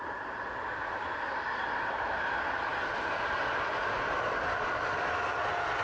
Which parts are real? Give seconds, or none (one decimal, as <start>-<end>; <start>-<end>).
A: 0.0-5.8